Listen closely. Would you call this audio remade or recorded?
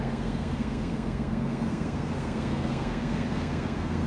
remade